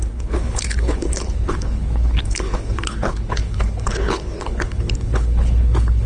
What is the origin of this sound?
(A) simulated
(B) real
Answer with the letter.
A